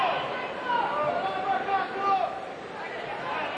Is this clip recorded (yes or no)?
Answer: yes